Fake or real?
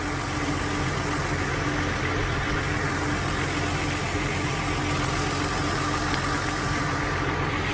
real